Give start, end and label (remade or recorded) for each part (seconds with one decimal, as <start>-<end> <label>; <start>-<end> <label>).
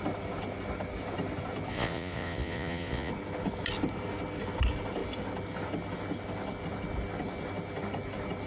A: 0.0-1.7 recorded; 1.7-3.1 remade; 3.1-8.5 recorded